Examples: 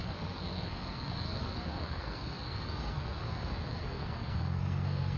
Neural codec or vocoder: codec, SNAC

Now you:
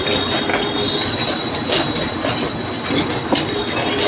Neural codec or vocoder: none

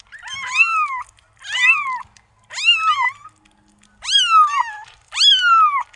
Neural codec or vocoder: none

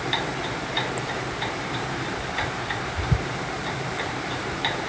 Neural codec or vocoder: vocoder, BigVGAN v2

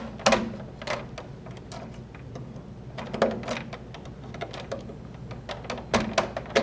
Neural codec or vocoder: none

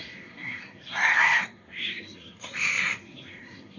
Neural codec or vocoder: codec, SNAC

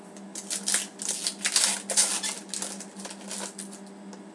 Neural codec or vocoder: none